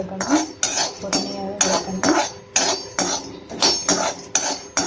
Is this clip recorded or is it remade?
recorded